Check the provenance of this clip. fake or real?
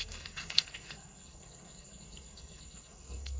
fake